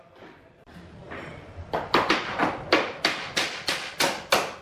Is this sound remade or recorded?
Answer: recorded